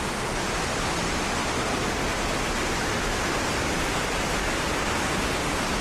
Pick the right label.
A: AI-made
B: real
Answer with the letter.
B